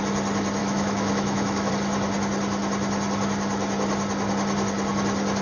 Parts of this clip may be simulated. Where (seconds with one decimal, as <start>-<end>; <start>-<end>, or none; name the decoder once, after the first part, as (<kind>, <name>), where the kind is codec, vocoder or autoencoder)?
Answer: 0.6-1.7 (autoencoder, DAC-VAE)